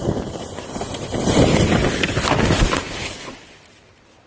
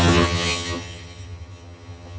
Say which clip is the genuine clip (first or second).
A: first